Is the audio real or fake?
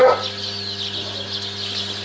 real